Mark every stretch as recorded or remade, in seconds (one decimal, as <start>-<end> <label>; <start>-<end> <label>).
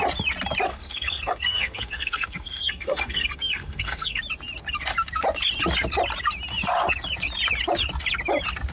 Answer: 0.0-0.7 recorded; 0.7-4.2 remade; 4.2-8.7 recorded